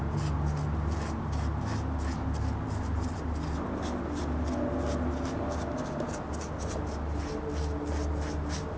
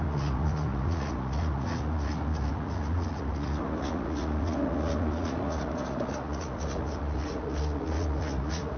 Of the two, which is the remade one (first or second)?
second